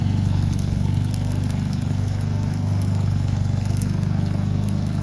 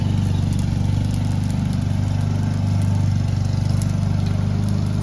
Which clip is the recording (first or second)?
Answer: second